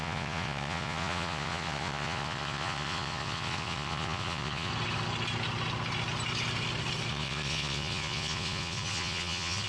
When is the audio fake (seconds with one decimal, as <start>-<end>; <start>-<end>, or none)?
0.0-4.7; 7.1-9.7